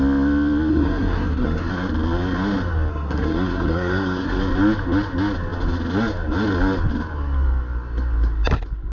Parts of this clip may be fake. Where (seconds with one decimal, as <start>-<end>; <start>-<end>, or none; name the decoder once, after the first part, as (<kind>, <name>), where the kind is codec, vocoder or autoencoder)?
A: 0.7-1.7 (codec, SNAC); 2.9-4.4